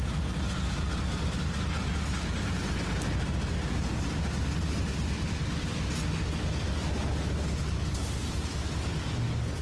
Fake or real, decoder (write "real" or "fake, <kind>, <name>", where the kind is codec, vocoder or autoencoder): real